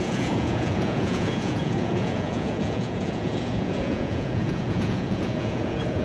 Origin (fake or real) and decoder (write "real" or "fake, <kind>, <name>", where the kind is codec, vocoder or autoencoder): fake, vocoder, Vocos